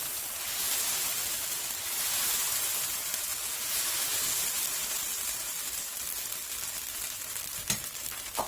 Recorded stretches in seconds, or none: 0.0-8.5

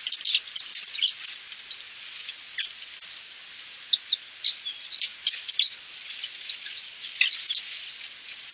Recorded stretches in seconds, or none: 0.0-0.7; 1.2-3.4; 7.0-8.5

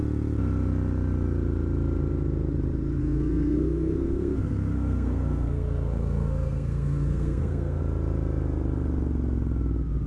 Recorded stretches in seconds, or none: 0.0-3.0; 7.8-10.1

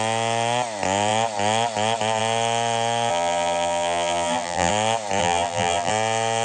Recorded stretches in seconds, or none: 0.0-3.1; 4.7-5.2; 5.9-6.4